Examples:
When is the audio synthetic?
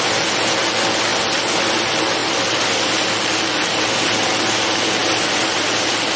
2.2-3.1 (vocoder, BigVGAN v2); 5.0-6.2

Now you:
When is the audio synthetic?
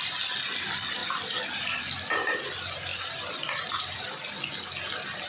1.0-2.1 (vocoder, BigVGAN v2); 2.9-4.1